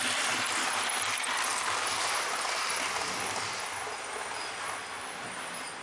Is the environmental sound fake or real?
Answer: fake